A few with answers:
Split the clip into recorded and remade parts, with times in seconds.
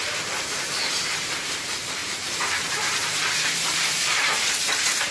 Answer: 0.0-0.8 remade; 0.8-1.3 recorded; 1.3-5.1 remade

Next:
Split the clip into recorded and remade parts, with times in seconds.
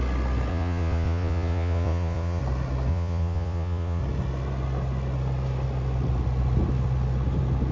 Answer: 0.0-0.5 recorded; 0.5-2.4 remade; 2.4-2.9 recorded; 2.9-4.0 remade; 4.0-7.7 recorded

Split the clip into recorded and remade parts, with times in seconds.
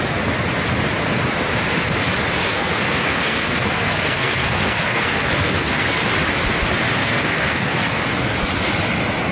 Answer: 0.0-2.4 recorded; 2.4-6.1 remade; 6.1-7.0 recorded; 7.0-8.0 remade; 8.0-9.3 recorded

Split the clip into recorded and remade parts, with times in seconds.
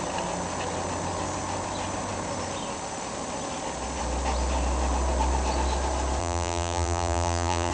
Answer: 0.0-6.2 recorded; 6.2-7.7 remade